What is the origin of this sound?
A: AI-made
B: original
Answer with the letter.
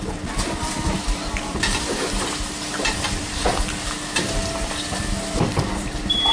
A